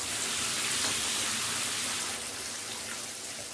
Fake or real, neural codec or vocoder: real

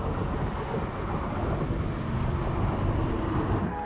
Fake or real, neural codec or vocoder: real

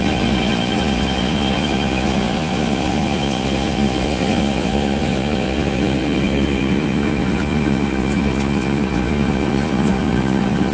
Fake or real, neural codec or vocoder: fake, vocoder, Vocos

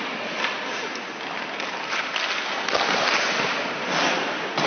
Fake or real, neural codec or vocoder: real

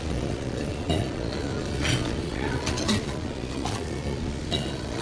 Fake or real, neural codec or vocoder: fake, vocoder, Vocos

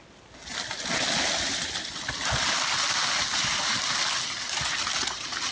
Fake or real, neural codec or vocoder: real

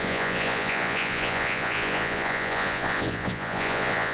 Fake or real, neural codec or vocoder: fake, vocoder, Vocos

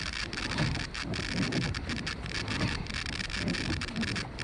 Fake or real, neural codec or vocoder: real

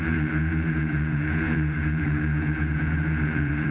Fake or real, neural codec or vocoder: fake, vocoder, Vocos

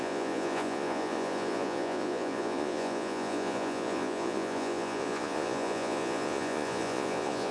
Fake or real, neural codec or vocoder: fake, vocoder, Vocos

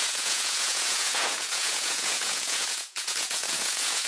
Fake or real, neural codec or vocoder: fake, vocoder, Vocos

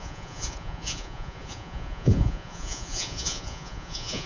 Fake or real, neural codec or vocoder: fake, vocoder, Vocos